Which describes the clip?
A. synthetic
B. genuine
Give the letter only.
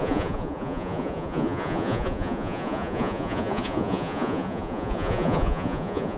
A